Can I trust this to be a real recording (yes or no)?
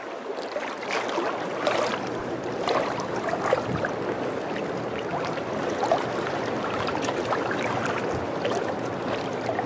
yes